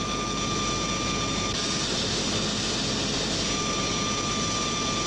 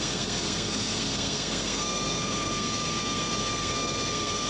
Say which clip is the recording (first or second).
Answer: first